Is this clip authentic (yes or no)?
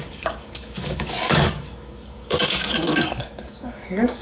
no